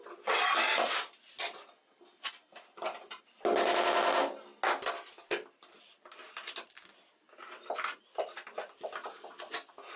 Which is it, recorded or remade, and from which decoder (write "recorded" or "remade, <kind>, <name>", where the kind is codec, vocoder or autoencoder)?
recorded